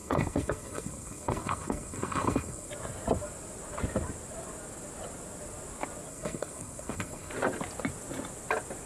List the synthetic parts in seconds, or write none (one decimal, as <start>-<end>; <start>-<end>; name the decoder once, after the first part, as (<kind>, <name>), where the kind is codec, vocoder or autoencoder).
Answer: 0.0-2.7 (codec, SNAC); 6.1-7.3